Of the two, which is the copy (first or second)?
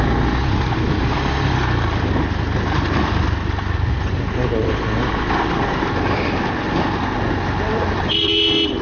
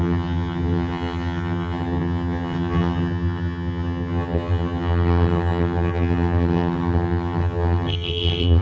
second